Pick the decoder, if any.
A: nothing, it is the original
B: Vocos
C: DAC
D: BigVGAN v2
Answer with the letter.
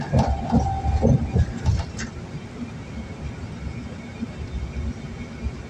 A